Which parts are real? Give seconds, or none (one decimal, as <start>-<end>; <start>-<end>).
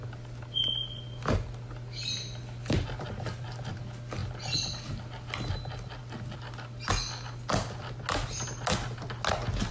0.0-9.7